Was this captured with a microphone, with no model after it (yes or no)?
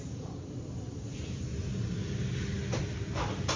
yes